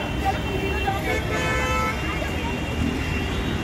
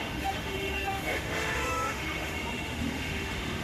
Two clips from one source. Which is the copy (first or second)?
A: second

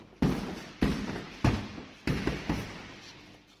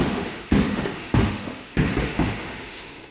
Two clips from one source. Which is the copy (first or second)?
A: second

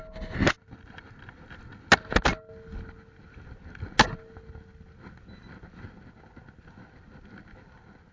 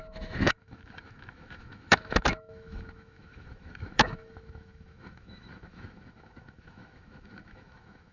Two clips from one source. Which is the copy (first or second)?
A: second